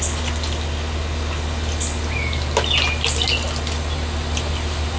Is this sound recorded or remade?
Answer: recorded